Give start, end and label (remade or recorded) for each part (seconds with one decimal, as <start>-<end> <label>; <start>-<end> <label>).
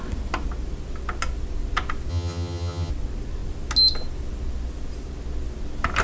0.0-2.1 recorded; 2.1-2.9 remade; 2.9-6.0 recorded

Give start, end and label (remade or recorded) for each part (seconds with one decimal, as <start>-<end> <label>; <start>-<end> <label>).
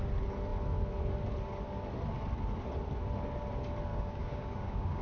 0.0-3.9 recorded; 3.9-5.0 remade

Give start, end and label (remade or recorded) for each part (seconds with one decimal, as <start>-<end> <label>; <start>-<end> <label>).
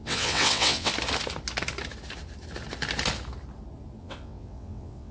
0.0-0.9 remade; 0.9-4.0 recorded; 4.0-5.1 remade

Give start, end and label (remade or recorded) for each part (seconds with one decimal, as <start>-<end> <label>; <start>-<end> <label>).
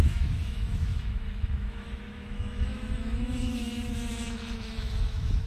0.0-5.5 remade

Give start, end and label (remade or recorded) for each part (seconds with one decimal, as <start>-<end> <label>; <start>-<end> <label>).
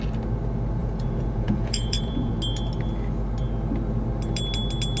0.0-0.8 recorded; 0.8-2.3 remade; 2.3-5.0 recorded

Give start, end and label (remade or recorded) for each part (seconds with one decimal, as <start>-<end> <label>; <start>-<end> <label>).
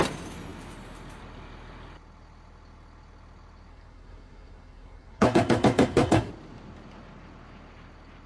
0.0-3.7 recorded; 3.7-6.3 remade; 6.3-8.3 recorded